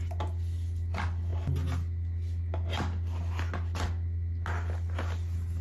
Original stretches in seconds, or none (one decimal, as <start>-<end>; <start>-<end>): 0.0-5.6